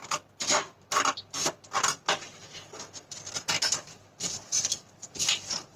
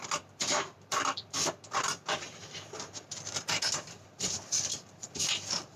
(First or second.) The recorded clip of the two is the first